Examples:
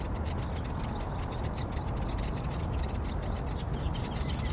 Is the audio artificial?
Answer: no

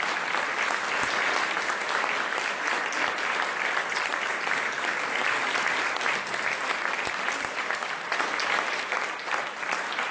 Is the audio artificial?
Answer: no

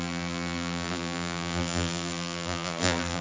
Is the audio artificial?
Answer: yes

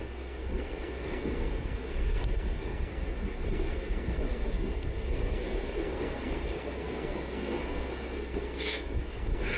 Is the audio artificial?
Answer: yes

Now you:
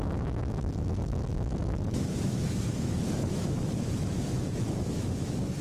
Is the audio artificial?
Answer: yes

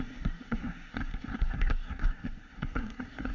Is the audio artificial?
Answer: yes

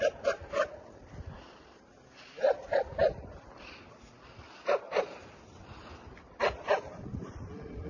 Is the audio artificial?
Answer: no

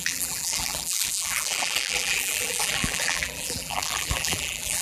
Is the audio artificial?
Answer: yes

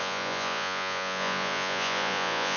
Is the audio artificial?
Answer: yes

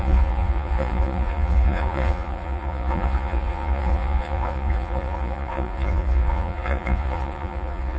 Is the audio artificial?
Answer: yes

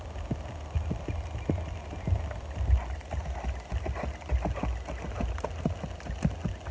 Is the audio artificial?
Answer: no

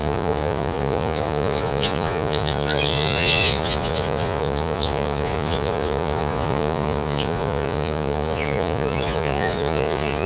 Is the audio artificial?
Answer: yes